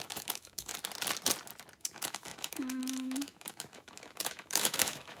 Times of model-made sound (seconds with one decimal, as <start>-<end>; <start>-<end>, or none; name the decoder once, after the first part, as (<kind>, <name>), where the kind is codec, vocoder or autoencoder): 0.0-0.7 (autoencoder, DAC-VAE); 1.8-5.2